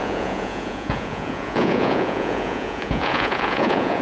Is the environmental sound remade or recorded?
remade